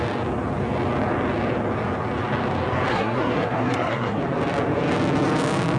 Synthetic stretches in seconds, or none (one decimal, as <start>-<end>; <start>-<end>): 2.9-4.2

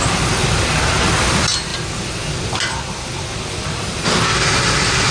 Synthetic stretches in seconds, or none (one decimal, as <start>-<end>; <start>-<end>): none

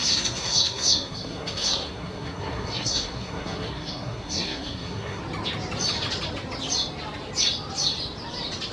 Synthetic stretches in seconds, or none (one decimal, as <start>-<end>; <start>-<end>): 0.0-5.2

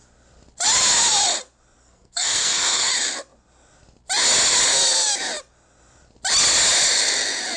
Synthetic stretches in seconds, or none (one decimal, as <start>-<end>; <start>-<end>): 1.8-2.9

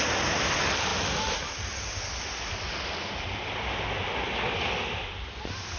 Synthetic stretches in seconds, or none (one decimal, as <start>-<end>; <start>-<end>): none

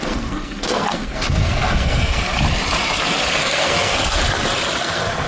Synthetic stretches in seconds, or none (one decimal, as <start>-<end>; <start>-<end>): 0.0-2.3; 3.4-4.2; 4.8-5.3

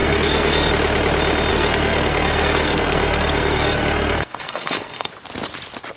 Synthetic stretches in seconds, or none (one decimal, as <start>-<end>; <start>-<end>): 0.0-0.7; 1.5-5.1